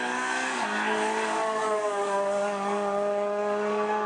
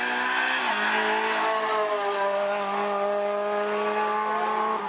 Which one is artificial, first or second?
first